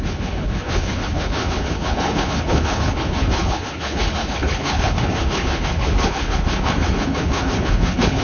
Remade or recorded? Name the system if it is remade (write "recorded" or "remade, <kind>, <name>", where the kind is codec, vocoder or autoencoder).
remade, codec, HILCodec